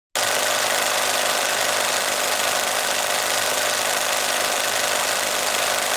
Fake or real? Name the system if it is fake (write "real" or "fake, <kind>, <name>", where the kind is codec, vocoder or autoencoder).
real